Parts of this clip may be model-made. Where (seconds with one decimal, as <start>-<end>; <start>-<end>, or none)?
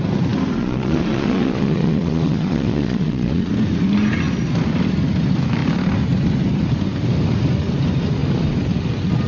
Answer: 0.6-3.5